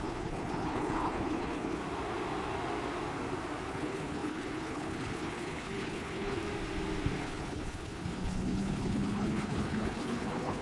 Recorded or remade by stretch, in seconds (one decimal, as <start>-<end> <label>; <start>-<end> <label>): 0.0-1.8 remade; 1.8-3.7 recorded; 3.7-6.4 remade; 6.4-7.2 recorded; 7.2-10.6 remade